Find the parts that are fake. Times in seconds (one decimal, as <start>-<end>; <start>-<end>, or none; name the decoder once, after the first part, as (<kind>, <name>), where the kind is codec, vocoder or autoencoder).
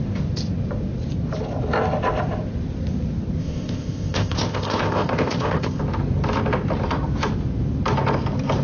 3.4-5.8 (codec, ZipCodec)